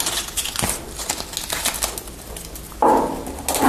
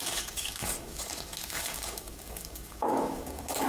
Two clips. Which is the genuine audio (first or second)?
first